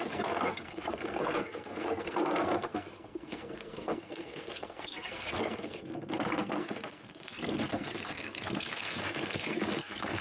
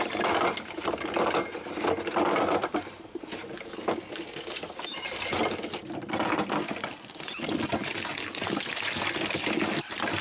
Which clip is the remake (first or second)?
first